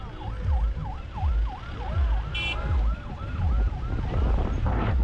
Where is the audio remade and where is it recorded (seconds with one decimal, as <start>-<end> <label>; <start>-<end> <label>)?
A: 0.0-5.0 recorded